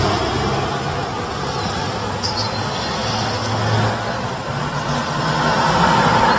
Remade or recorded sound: recorded